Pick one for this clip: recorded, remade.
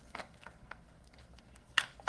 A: remade